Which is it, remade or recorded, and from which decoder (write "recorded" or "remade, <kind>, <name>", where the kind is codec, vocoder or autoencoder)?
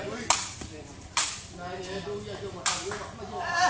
recorded